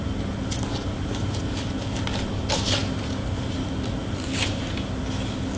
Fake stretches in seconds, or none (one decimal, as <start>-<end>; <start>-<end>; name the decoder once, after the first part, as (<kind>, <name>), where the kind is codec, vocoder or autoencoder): 0.7-1.4 (vocoder, BigVGAN v2); 4.0-5.0